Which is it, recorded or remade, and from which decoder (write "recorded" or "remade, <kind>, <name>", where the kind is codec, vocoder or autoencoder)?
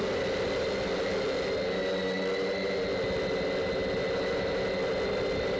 recorded